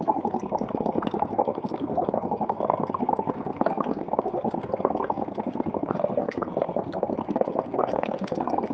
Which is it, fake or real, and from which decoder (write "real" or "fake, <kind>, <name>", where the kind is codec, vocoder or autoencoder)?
fake, codec, SNAC